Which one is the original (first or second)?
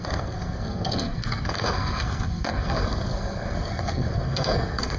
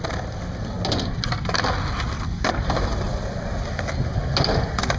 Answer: second